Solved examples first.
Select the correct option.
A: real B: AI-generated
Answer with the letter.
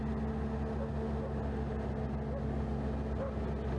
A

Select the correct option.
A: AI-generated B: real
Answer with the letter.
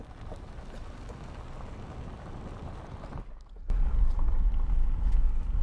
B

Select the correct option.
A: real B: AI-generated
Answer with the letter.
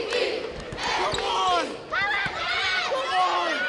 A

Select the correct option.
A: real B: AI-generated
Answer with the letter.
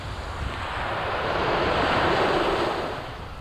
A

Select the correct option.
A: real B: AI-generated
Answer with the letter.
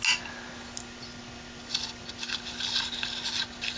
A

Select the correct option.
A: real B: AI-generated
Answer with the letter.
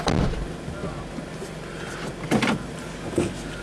A